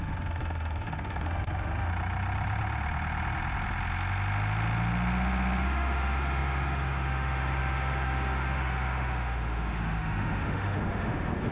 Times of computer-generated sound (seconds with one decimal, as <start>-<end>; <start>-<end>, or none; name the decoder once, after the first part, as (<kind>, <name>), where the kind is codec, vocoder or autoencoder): 0.0-1.9 (autoencoder, DAC-VAE); 5.6-11.5